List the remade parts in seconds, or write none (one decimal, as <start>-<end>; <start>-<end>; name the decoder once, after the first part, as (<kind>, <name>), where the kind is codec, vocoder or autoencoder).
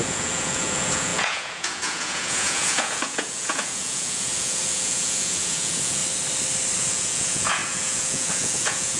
0.0-6.0 (vocoder, Vocos); 6.8-9.0